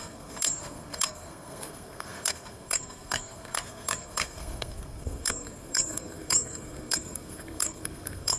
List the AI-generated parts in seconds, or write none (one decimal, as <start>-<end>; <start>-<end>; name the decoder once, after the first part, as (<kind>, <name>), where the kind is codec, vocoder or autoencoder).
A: 0.0-8.4 (codec, SNAC)